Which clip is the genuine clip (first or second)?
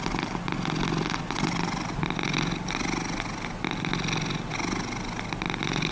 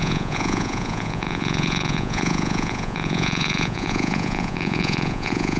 first